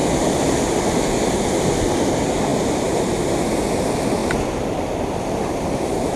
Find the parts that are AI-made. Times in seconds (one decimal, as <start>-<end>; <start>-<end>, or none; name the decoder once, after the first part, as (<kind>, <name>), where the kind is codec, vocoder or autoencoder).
none